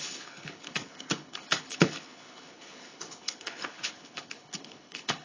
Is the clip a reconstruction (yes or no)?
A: yes